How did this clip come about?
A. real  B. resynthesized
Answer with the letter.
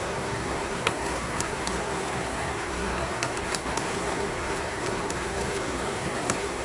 B